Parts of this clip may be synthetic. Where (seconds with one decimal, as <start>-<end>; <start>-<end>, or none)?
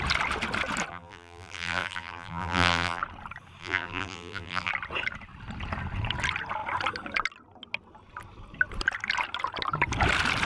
0.9-3.0; 3.6-4.7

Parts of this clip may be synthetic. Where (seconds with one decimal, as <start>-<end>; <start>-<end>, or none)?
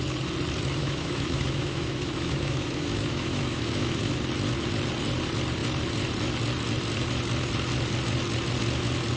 0.8-4.1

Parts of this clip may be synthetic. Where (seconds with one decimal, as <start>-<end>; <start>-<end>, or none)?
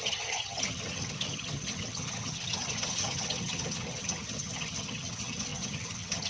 0.0-6.3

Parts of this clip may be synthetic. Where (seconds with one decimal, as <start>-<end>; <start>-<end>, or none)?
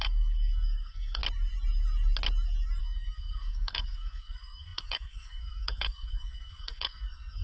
0.0-1.2; 2.8-7.4